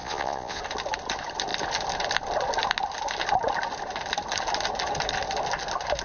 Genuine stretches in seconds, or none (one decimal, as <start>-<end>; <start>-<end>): 0.6-6.0